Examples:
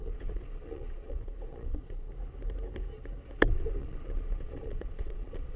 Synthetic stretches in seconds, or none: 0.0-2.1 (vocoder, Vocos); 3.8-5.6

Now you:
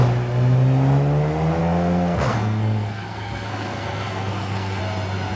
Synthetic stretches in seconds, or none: 1.6-4.8 (codec, SNAC)

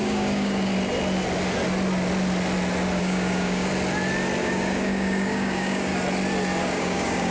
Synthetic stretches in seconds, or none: 0.0-0.7 (codec, DAC); 3.0-3.7; 4.4-5.9; 6.6-7.3

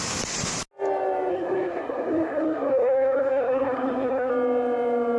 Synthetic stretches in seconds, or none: 1.3-4.3 (codec, SNAC)